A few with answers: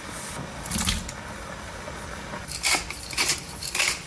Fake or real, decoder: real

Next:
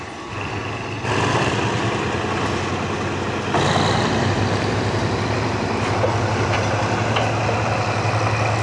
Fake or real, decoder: real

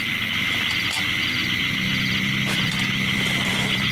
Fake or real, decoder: fake, vocoder, BigVGAN v2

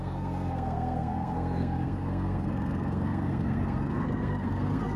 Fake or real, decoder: fake, codec, SNAC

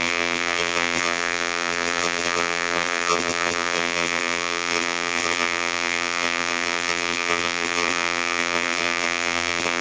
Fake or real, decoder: fake, vocoder, BigVGAN v2